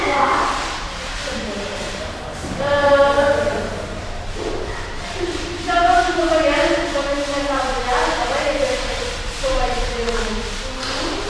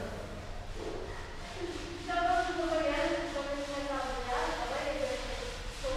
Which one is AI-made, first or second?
first